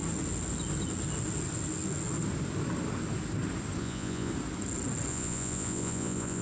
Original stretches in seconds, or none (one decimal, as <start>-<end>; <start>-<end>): 0.0-3.8; 4.3-5.1